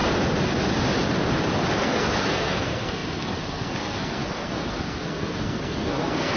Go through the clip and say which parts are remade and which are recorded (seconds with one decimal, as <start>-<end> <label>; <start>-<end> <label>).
0.0-1.8 recorded; 1.8-6.4 remade

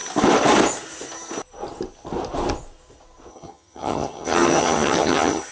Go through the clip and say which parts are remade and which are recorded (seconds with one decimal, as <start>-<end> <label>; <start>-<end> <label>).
0.0-3.3 recorded; 3.3-5.5 remade